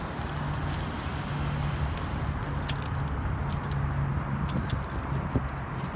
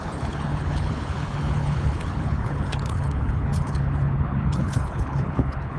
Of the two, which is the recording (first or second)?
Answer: first